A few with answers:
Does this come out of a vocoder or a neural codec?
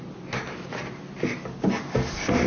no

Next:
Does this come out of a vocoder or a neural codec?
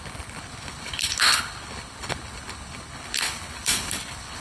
yes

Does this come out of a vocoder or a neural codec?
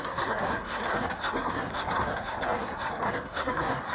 yes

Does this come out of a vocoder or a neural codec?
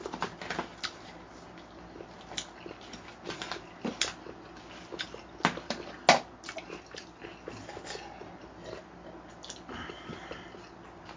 no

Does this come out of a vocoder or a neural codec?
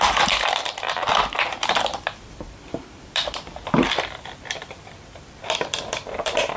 yes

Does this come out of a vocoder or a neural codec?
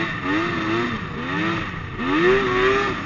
no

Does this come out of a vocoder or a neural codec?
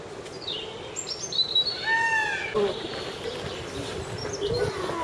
no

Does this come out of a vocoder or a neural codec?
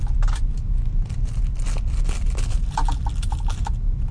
no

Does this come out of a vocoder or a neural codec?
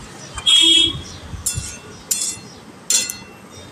no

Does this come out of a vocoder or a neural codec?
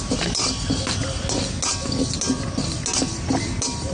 no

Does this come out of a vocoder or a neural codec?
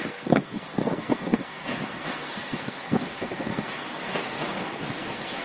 yes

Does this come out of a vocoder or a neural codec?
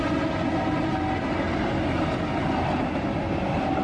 no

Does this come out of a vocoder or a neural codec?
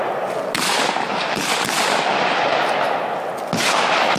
no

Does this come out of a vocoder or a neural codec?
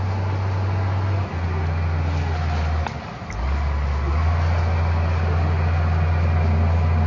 no